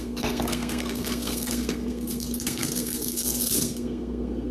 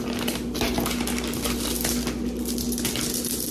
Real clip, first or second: second